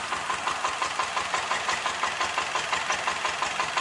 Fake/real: real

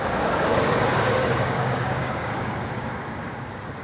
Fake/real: fake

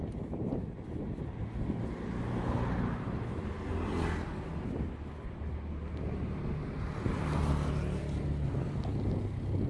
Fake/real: real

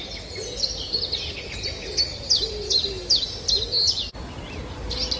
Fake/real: real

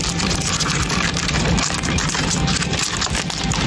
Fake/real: real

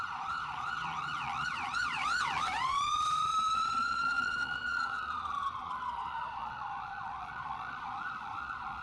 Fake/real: fake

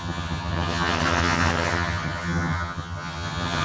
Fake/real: fake